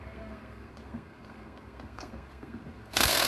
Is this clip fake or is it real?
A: fake